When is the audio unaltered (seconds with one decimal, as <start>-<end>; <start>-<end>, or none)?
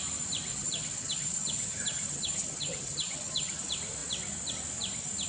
0.0-0.5; 3.6-5.3